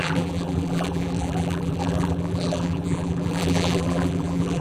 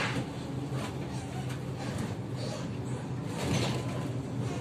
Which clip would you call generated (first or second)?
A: first